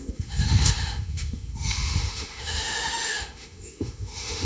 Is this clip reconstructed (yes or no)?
yes